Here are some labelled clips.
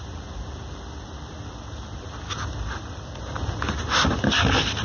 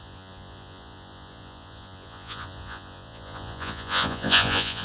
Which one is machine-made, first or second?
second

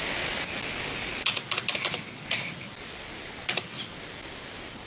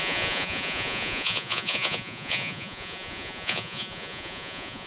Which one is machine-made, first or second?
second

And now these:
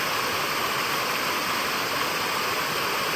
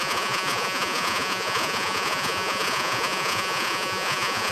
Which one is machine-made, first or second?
second